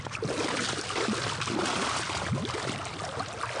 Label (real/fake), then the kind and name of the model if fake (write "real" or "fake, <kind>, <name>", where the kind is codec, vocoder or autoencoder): real